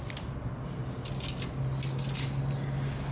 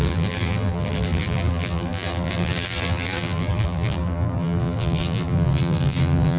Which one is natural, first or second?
first